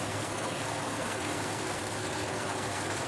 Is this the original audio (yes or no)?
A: no